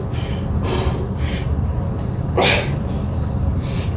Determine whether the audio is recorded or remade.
recorded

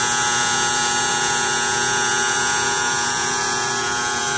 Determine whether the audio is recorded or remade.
remade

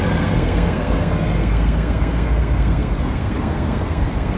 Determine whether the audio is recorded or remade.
remade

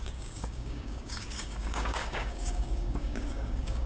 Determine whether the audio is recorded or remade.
remade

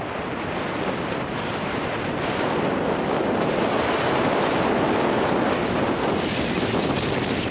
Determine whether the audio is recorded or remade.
recorded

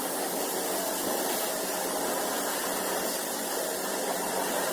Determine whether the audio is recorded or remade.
remade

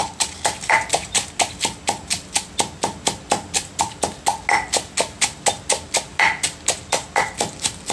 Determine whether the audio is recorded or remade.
recorded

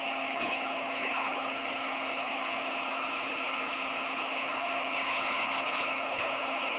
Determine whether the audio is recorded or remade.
remade